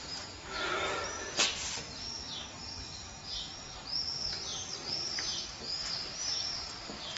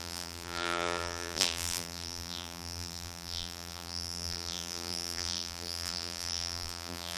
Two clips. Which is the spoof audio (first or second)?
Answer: second